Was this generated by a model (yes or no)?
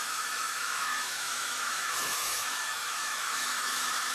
yes